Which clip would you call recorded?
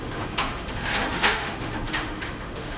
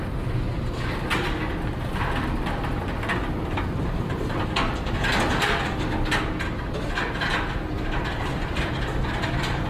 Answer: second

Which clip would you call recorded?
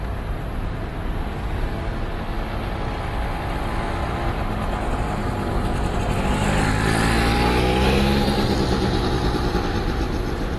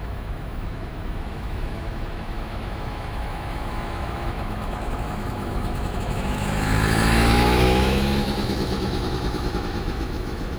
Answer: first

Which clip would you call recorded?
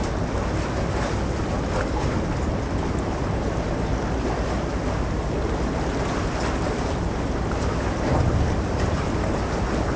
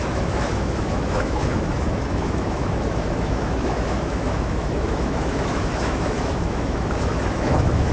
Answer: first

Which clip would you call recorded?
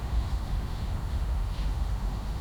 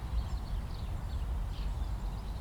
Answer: second